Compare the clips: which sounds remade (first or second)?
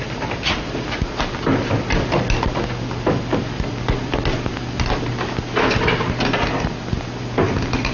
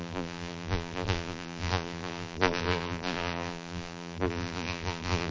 second